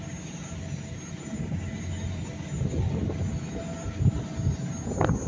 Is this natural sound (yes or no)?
yes